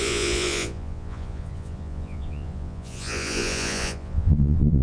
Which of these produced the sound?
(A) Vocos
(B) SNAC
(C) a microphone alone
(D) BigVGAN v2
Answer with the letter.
A